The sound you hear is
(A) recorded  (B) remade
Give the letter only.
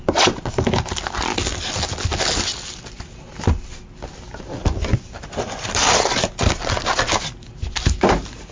A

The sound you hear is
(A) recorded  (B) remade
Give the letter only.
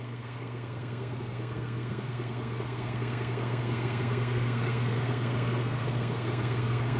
B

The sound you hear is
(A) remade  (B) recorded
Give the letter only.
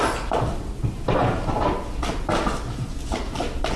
B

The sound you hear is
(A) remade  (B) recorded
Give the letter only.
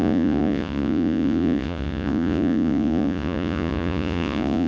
A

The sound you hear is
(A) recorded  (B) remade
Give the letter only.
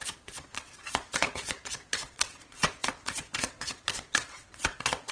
B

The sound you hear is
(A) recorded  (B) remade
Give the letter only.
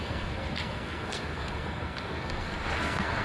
B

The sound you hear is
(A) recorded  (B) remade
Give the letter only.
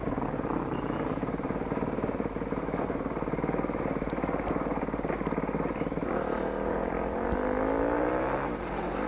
A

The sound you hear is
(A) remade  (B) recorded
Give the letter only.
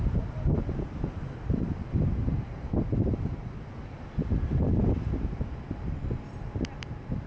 B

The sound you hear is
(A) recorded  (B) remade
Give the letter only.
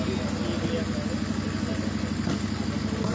A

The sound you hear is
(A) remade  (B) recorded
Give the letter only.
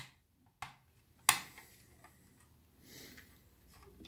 B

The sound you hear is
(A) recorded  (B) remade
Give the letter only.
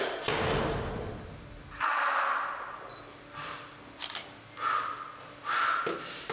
A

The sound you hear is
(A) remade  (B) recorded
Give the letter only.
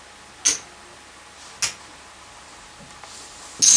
B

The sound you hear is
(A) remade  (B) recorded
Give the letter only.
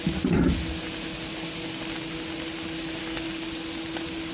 B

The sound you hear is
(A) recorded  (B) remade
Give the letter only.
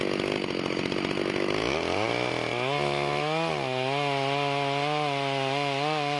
A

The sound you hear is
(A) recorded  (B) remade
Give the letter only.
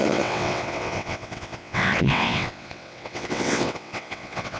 B